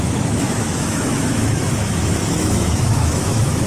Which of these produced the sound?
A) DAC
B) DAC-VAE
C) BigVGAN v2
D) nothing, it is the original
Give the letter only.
B